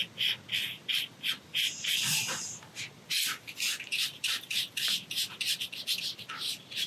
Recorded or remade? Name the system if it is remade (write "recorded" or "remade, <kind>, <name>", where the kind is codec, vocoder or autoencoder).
recorded